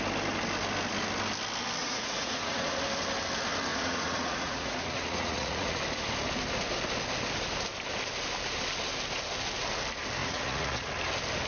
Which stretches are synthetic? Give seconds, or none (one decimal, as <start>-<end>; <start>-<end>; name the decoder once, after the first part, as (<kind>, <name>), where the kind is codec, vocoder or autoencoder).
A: 1.8-2.8 (vocoder, Vocos); 3.7-5.8; 10.2-10.9